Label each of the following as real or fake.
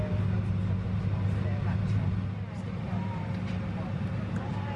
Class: real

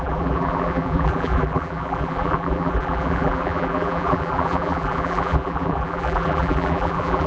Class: fake